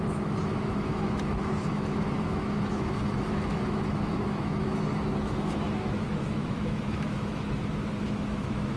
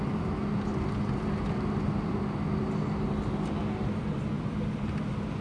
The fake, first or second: first